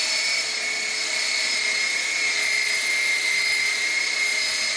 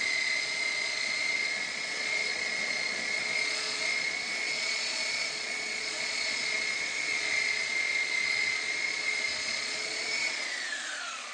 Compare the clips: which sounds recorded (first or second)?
first